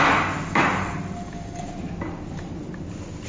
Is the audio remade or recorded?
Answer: recorded